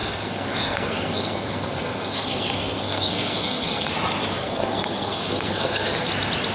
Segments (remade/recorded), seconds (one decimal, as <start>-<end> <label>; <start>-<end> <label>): 0.0-3.9 remade; 3.9-4.4 recorded; 4.4-6.1 remade; 6.1-6.5 recorded